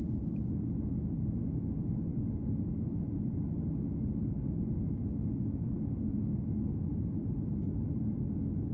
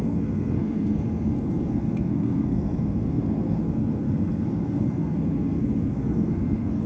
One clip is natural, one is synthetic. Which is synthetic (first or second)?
second